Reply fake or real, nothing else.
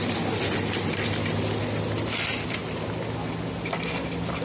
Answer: real